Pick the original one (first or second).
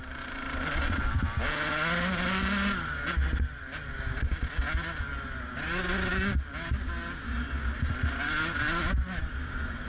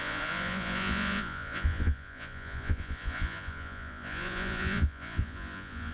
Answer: first